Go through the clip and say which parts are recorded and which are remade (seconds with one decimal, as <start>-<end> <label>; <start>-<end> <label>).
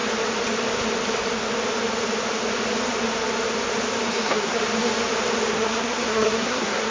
0.0-4.1 recorded; 4.1-4.6 remade; 4.6-5.5 recorded; 5.5-6.9 remade